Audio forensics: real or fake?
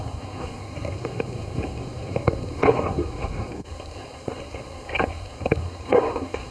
fake